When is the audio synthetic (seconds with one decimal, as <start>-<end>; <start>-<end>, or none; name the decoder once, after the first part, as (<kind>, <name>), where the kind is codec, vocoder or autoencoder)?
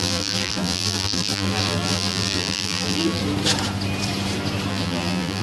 0.0-3.2 (vocoder, BigVGAN v2); 4.7-5.4